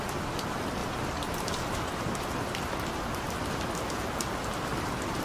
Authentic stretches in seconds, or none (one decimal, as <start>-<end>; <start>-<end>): 0.0-5.2